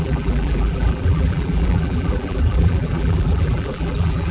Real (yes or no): no